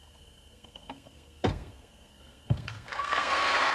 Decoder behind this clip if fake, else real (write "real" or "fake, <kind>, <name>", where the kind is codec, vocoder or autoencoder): fake, codec, SNAC